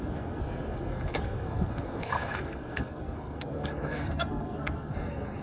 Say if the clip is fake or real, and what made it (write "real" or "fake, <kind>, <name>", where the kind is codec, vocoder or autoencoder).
fake, codec, SNAC